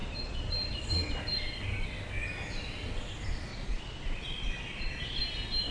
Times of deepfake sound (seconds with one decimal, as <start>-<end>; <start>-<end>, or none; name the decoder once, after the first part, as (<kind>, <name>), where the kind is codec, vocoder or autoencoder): 0.0-1.2 (vocoder, Vocos); 3.5-5.2

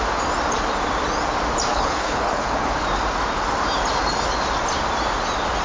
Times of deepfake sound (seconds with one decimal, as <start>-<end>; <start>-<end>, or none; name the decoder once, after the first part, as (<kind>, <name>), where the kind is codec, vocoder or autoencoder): 1.7-2.7 (codec, HILCodec)

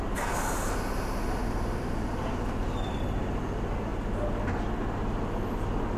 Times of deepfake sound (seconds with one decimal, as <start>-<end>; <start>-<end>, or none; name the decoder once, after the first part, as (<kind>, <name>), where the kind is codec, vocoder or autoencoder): 1.4-3.2 (vocoder, BigVGAN v2)

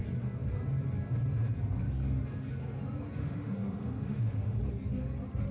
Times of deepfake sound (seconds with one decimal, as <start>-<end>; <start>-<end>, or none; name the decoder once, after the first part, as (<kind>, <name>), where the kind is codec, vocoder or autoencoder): 3.2-4.6 (autoencoder, DAC-VAE)